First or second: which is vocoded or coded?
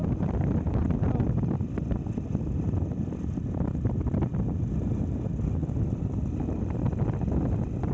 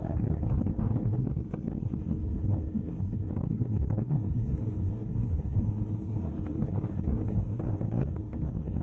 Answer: second